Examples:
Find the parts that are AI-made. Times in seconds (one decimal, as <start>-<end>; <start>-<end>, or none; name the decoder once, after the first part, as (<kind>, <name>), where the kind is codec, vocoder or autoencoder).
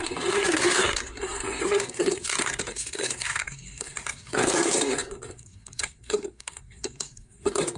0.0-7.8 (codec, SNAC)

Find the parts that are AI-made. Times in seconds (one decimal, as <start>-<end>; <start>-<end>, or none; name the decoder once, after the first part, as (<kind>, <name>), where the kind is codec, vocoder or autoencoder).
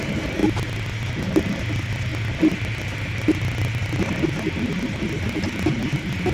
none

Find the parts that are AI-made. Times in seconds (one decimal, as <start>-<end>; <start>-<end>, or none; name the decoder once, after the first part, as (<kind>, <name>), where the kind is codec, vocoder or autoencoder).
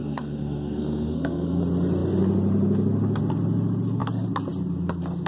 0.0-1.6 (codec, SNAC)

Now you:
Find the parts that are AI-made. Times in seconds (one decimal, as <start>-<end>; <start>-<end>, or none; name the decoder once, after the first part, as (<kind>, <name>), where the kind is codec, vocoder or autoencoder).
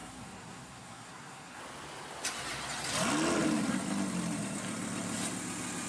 0.0-1.6 (codec, SNAC)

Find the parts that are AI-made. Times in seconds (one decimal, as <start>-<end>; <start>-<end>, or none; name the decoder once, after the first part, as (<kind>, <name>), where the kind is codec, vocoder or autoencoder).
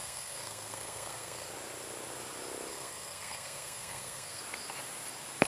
0.0-1.5 (codec, SNAC); 2.7-4.4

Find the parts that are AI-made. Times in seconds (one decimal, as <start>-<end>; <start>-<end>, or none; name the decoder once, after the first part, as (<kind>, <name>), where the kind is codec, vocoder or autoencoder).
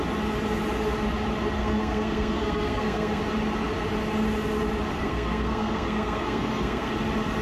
1.6-3.2 (codec, SNAC); 4.9-6.9